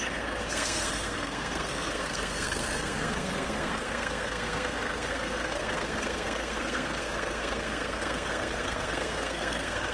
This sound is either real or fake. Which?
fake